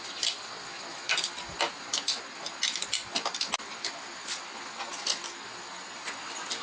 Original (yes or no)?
yes